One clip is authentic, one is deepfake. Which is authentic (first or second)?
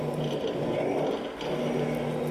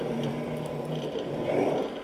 first